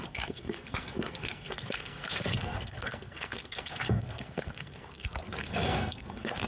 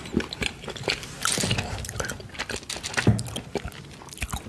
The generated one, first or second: first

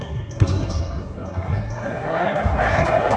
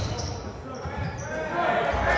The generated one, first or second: first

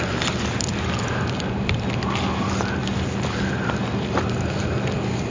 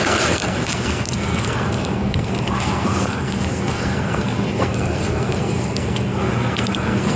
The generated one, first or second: second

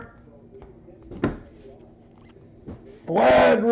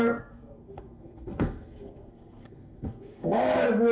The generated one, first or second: second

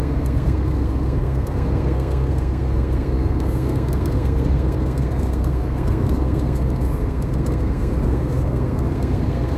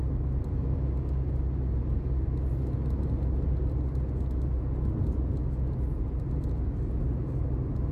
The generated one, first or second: first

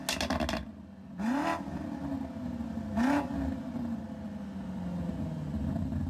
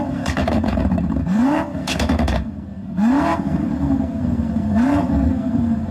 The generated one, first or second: second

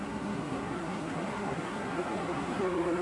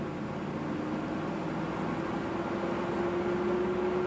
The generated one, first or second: first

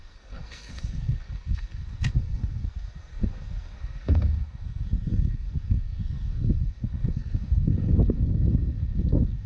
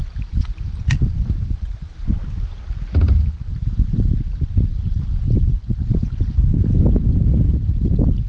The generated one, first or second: first